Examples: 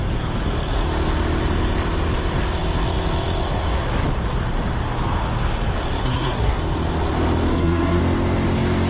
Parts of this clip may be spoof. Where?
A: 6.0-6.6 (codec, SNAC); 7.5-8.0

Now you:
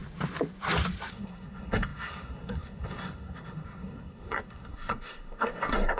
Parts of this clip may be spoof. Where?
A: 1.1-6.0 (codec, SNAC)

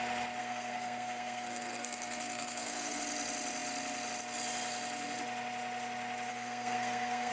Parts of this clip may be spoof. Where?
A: 0.4-3.0 (codec, SNAC); 6.3-7.3

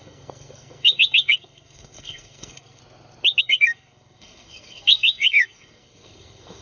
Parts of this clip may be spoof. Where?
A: 0.0-2.8 (codec, SNAC); 3.4-6.6

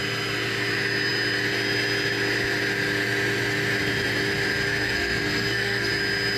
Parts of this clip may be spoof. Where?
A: 4.7-5.9 (codec, SNAC)

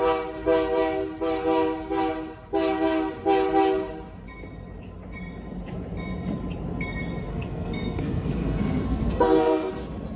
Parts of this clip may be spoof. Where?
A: 7.3-9.7 (codec, SNAC)

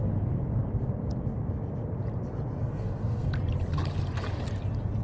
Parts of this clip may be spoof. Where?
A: 2.6-3.3 (codec, SNAC)